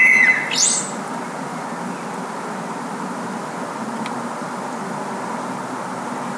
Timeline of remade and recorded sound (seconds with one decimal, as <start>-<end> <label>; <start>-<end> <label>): 0.0-6.4 recorded